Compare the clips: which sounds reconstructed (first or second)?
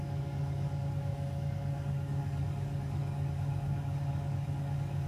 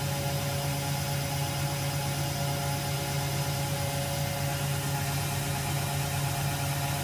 first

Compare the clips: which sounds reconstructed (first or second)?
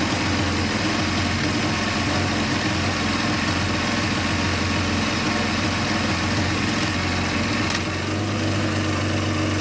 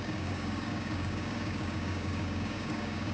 second